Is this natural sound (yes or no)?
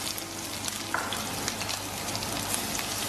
yes